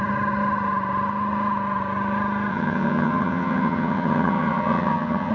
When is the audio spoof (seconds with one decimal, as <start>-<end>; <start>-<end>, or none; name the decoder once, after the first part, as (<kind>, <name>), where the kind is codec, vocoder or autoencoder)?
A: 2.5-5.3 (vocoder, HiFi-GAN)